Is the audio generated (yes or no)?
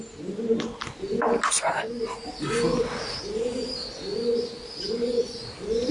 no